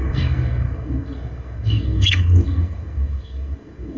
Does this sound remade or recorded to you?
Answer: remade